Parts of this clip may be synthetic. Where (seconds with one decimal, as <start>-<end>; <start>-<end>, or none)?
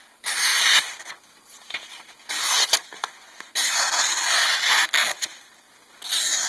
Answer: 2.8-3.5